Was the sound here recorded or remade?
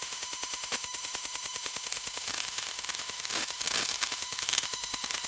remade